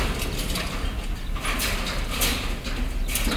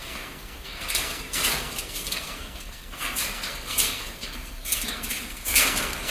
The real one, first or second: first